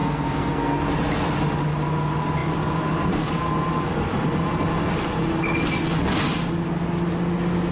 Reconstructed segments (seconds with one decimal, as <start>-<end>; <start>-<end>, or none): 0.0-0.8